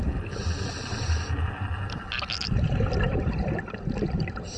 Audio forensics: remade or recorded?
remade